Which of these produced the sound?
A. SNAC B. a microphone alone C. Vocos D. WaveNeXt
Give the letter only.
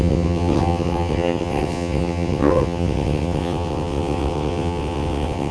D